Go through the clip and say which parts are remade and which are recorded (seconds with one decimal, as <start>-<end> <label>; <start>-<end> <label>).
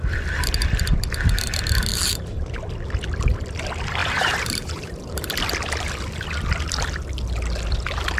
0.0-1.9 recorded; 1.9-2.5 remade; 2.5-4.0 recorded; 4.0-5.2 remade; 5.2-8.2 recorded